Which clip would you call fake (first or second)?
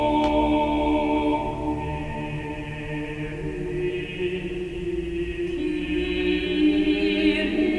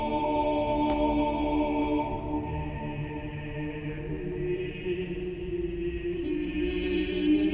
second